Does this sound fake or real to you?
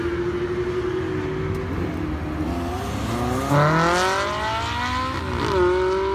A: real